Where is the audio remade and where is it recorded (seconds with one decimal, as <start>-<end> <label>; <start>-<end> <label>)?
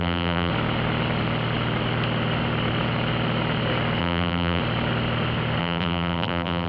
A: 0.0-0.5 remade; 0.5-4.0 recorded; 4.0-4.6 remade; 4.6-5.6 recorded; 5.6-6.7 remade